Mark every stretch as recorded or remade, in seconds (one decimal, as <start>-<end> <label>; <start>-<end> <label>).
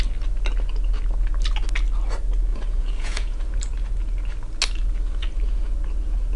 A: 0.0-2.5 recorded; 2.5-3.4 remade; 3.4-6.4 recorded